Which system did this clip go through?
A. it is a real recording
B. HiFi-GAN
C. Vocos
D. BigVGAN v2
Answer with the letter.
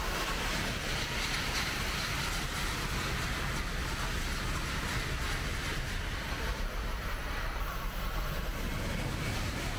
A